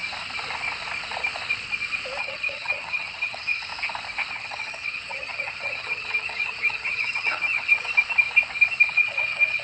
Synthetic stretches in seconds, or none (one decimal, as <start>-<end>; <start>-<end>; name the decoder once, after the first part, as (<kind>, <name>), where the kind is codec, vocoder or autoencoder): 2.2-3.7 (vocoder, HiFi-GAN); 4.3-7.9; 8.9-9.6